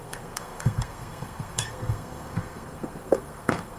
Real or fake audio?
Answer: fake